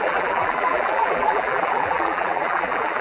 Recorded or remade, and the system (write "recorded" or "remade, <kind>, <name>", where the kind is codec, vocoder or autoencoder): remade, vocoder, BigVGAN v2